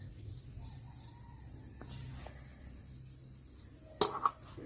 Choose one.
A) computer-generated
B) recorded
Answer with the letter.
B